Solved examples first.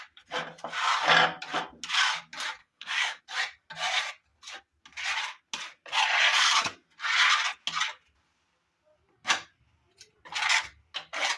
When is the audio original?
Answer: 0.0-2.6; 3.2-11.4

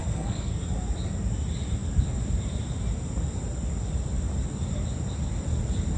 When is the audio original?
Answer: 0.6-6.0

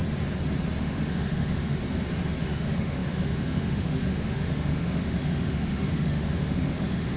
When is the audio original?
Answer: 0.0-0.8; 1.8-2.4